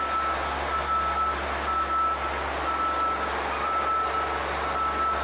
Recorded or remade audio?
recorded